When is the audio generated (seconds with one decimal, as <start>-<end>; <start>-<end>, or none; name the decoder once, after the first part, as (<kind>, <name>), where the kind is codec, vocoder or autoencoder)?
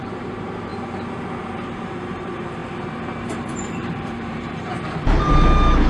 0.0-0.7 (vocoder, BigVGAN v2); 1.8-2.6; 3.2-4.7